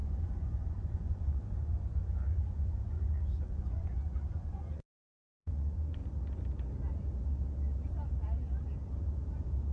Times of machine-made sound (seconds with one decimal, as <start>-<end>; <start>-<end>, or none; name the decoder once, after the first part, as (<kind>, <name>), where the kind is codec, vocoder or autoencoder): 0.0-6.0 (vocoder, Vocos)